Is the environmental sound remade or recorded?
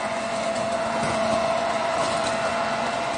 remade